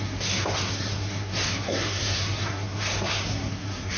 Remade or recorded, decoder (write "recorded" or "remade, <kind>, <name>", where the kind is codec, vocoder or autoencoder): remade, codec, SNAC